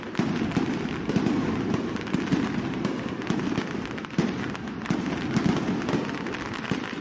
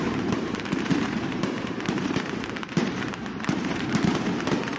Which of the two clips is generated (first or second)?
second